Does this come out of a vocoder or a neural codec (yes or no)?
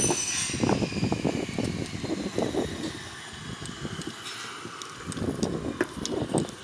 no